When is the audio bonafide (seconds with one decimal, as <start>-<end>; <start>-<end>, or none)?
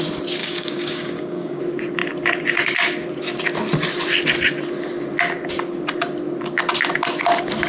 0.0-0.4; 1.6-7.7